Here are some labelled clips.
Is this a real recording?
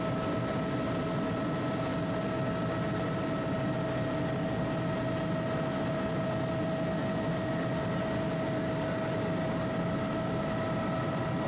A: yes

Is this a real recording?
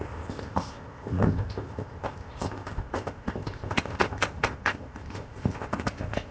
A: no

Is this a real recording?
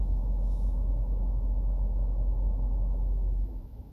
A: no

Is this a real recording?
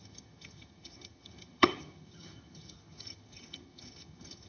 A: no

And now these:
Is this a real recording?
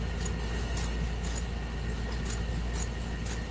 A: yes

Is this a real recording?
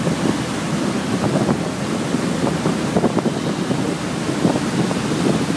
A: yes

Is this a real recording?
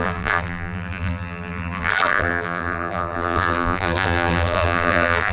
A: no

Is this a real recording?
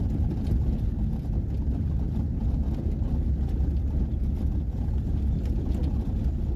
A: yes